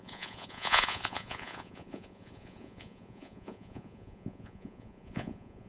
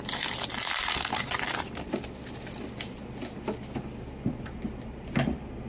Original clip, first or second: second